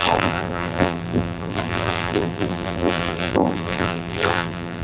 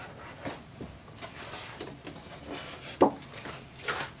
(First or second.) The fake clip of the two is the first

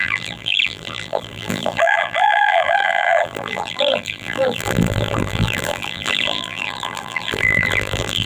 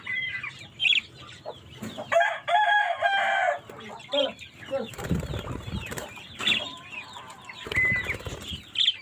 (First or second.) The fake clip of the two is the first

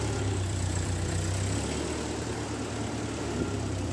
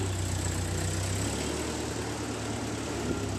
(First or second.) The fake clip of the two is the first